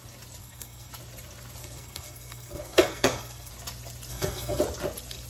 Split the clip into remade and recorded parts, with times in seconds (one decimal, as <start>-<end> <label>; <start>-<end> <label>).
0.0-0.4 recorded; 0.4-0.9 remade; 0.9-1.6 recorded; 1.6-3.5 remade; 3.5-4.1 recorded; 4.1-4.6 remade; 4.6-5.3 recorded

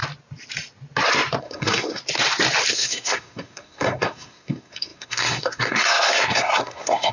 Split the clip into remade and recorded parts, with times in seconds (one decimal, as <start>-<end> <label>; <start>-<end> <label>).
0.0-1.4 recorded; 1.4-2.0 remade; 2.0-2.7 recorded; 2.7-7.1 remade

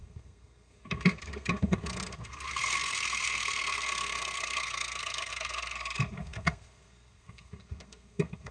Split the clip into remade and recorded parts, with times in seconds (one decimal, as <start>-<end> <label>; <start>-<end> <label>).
0.0-8.5 remade

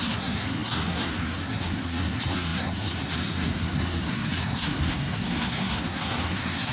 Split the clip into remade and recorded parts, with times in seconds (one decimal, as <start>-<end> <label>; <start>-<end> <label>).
0.0-6.7 remade

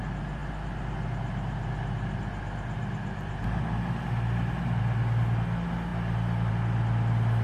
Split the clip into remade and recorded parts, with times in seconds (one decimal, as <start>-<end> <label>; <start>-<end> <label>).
0.0-7.4 recorded